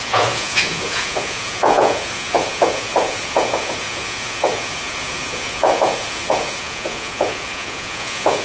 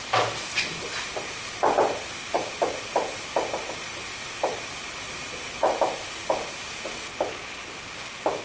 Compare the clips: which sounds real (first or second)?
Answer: second